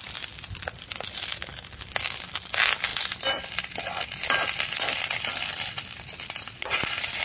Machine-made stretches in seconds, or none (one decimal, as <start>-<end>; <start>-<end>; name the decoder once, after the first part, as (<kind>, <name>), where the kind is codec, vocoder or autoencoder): 6.4-7.2 (vocoder, Vocos)

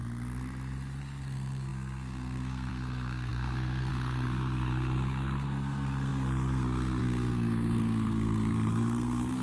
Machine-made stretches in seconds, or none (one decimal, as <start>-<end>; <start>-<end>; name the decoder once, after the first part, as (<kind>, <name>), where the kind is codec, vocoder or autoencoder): 1.0-9.4 (codec, SNAC)

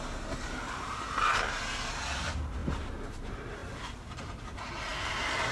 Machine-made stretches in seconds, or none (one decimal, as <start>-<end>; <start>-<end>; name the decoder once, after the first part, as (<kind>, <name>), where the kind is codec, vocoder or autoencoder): none

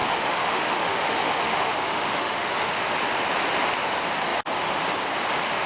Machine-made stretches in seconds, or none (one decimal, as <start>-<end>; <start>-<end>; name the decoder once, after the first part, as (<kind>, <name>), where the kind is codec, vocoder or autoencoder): 0.0-2.8 (autoencoder, DAC-VAE)

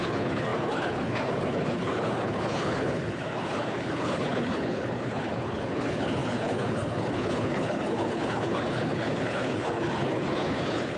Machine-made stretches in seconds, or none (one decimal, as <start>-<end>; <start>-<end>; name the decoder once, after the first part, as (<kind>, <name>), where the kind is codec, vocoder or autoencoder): 0.0-11.0 (codec, HILCodec)

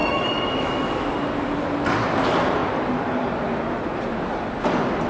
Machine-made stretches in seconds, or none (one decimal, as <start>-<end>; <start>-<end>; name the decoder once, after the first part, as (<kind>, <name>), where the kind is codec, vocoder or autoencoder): 0.0-1.1 (autoencoder, DAC-VAE)

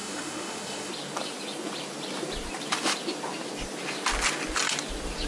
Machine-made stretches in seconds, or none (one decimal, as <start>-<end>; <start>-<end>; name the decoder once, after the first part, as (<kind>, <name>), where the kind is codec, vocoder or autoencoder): 0.0-0.9 (autoencoder, DAC-VAE)